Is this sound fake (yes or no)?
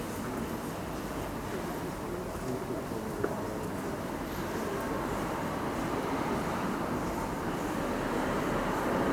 no